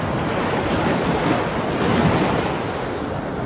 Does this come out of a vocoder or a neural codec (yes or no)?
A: no